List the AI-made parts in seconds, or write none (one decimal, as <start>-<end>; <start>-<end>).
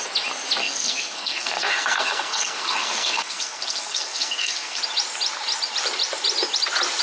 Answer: 0.6-4.8